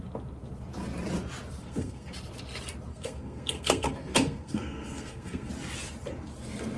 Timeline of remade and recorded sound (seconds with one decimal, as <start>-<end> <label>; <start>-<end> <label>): 0.0-1.6 recorded; 1.6-2.1 remade; 2.1-2.9 recorded; 2.9-5.5 remade; 5.5-6.8 recorded